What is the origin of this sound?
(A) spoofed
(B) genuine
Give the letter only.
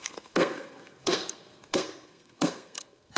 A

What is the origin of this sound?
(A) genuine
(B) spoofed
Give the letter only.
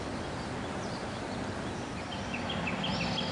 A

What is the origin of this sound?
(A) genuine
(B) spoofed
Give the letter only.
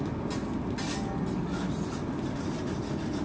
A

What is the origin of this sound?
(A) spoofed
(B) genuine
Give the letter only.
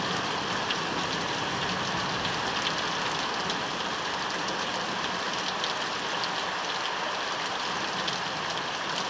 B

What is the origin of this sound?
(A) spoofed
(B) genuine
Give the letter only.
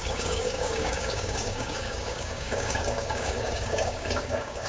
A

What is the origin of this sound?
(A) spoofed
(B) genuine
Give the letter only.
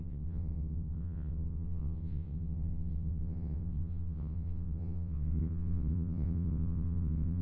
A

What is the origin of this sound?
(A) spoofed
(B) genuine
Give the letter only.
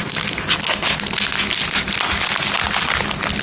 B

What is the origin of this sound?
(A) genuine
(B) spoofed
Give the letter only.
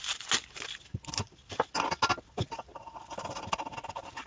A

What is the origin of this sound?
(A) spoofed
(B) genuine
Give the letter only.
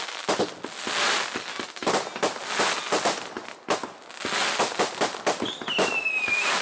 B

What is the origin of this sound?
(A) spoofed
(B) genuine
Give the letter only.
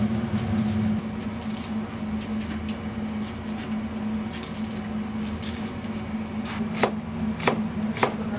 B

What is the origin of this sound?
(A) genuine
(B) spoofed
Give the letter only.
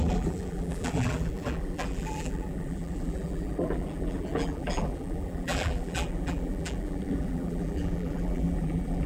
B